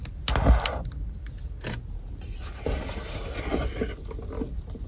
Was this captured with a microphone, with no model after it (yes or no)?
yes